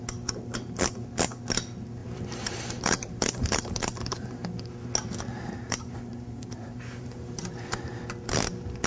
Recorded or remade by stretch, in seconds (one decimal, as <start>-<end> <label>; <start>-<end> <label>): 0.0-2.0 recorded; 2.0-4.7 remade; 4.7-5.3 recorded; 5.3-7.9 remade; 7.9-8.9 recorded